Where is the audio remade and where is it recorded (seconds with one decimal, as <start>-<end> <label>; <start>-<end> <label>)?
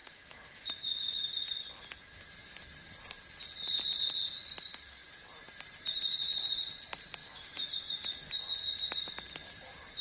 0.0-1.3 remade; 1.3-7.2 recorded; 7.2-7.7 remade; 7.7-10.0 recorded